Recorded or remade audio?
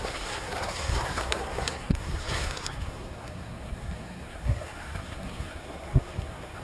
remade